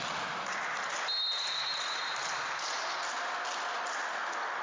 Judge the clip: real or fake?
real